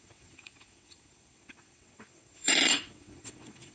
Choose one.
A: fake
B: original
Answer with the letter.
A